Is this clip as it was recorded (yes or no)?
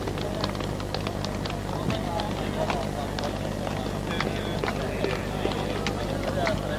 yes